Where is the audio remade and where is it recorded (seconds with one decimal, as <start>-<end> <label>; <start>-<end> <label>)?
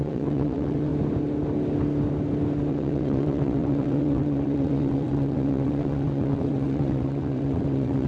0.0-0.9 remade; 0.9-2.7 recorded; 2.7-8.1 remade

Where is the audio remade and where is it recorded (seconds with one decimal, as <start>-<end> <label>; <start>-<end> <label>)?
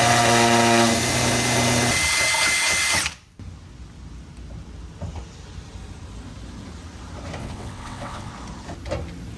0.0-7.4 recorded; 7.4-8.3 remade; 8.3-9.4 recorded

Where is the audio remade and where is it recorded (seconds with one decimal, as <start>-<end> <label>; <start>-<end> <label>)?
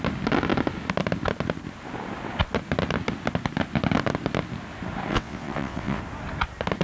0.0-5.1 recorded; 5.1-6.0 remade; 6.0-6.8 recorded